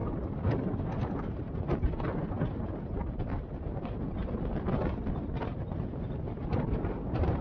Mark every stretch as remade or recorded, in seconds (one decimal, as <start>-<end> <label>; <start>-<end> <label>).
0.0-4.4 remade; 4.4-6.4 recorded; 6.4-7.4 remade